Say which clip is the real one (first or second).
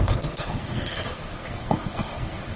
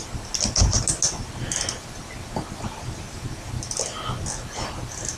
second